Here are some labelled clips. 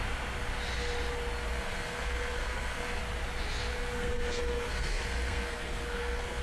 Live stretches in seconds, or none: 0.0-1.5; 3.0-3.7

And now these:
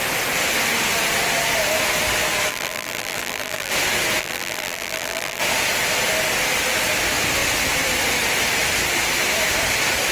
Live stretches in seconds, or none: 0.0-2.5; 3.7-4.2; 5.4-10.1

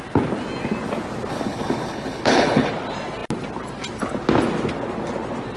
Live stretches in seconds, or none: 0.0-1.3; 2.7-5.6

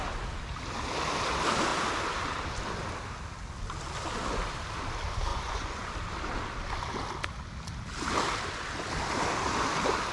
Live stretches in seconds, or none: 0.0-5.3; 5.9-10.1

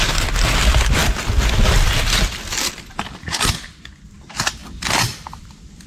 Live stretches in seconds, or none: 0.0-1.0; 2.7-4.6; 5.5-5.9

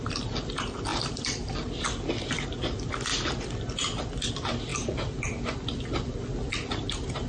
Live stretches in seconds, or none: 0.0-7.3